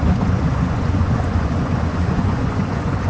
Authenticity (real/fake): fake